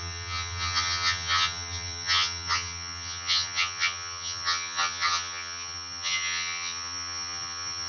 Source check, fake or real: fake